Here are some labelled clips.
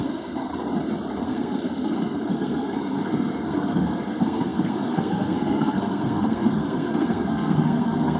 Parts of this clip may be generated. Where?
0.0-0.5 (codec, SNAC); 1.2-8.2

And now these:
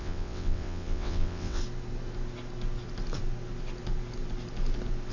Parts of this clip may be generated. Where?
0.0-1.6 (vocoder, WaveNeXt)

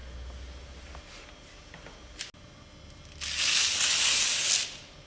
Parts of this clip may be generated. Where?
none

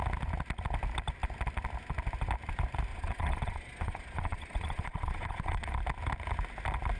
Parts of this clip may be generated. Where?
2.9-5.7 (vocoder, Vocos)

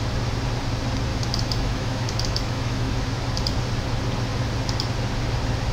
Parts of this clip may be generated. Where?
1.1-2.9 (autoencoder, DAC-VAE)

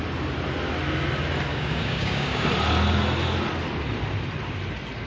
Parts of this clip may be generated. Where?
1.5-2.5 (codec, DAC)

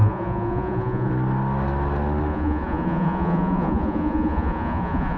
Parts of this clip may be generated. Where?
0.0-1.1 (vocoder, Vocos); 2.3-5.2

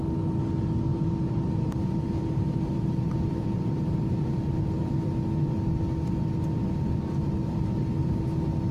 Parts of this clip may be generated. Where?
0.9-4.9 (vocoder, BigVGAN v2); 7.4-8.1